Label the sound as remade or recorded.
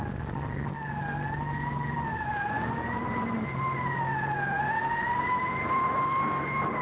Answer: recorded